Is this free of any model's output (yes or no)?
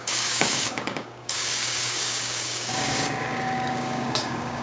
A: no